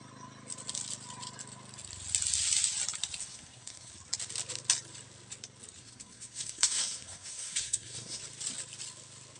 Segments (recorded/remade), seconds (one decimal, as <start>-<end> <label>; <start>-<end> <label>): 0.0-3.2 recorded; 3.2-3.9 remade; 3.9-5.8 recorded; 5.8-8.2 remade; 8.2-9.4 recorded